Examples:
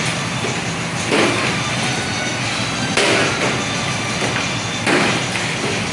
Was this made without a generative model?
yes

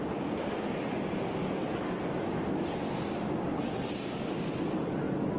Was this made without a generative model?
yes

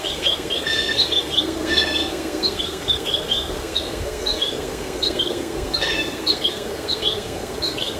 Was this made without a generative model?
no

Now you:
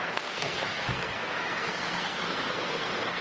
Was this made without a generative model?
no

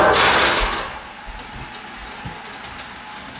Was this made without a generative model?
yes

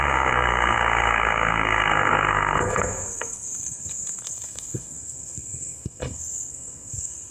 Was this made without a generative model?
no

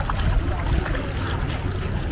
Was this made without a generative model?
yes